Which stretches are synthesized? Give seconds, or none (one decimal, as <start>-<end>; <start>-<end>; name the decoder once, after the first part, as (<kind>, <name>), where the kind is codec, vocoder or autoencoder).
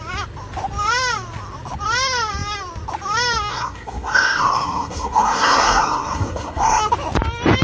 3.5-6.8 (codec, SNAC)